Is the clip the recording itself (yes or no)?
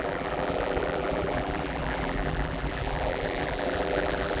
no